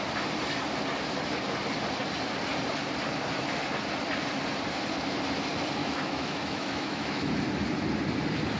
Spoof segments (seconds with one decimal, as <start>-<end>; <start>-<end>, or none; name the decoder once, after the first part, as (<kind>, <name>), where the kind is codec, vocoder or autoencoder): 5.8-7.3 (autoencoder, DAC-VAE)